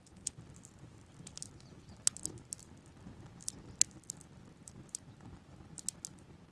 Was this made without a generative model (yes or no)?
yes